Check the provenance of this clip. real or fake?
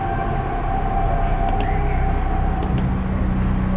real